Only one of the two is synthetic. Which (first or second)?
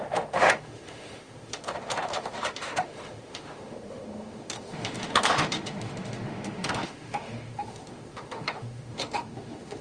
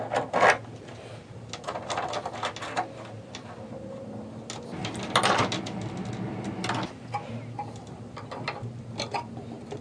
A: first